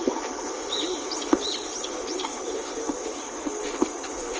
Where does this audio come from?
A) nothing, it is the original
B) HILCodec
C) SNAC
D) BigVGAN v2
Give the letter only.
B